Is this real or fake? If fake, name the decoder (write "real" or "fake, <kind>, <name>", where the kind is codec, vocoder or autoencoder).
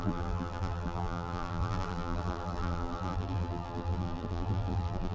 fake, vocoder, BigVGAN v2